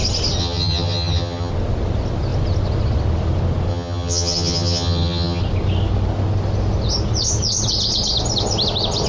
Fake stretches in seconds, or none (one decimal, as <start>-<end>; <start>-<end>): 0.4-1.5; 3.7-5.4